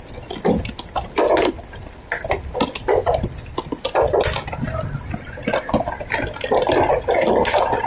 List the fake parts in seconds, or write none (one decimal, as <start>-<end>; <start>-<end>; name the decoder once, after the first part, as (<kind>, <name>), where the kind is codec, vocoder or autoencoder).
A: none